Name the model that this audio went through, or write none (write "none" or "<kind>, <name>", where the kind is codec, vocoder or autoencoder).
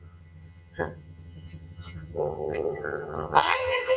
vocoder, HiFi-GAN